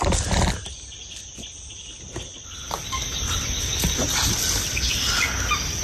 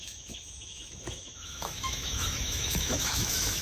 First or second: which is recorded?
first